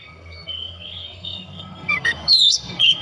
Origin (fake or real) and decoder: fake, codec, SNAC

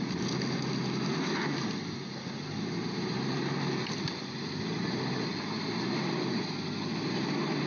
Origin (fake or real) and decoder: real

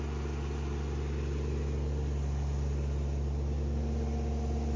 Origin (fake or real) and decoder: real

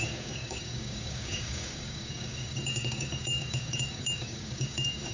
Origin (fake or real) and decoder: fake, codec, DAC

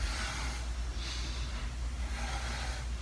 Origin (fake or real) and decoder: real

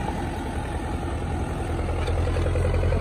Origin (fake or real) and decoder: real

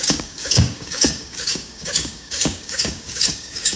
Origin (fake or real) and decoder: fake, codec, DAC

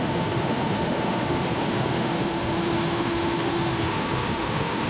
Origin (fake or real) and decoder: fake, autoencoder, DAC-VAE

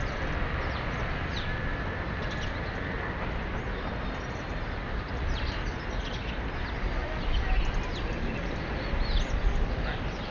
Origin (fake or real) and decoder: real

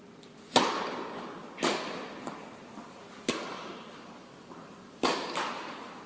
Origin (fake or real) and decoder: real